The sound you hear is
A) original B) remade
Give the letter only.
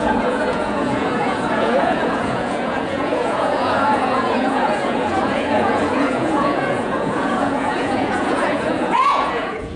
B